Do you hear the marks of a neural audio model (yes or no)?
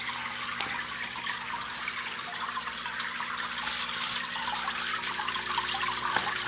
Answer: no